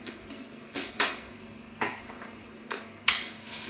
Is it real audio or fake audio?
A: fake